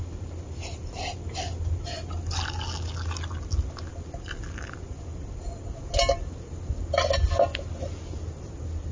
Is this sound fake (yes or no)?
no